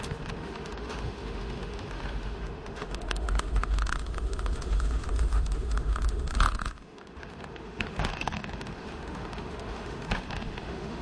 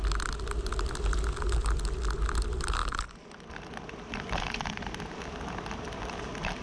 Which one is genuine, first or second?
second